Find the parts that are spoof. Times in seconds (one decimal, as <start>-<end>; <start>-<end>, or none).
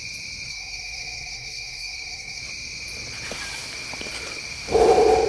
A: 0.5-2.4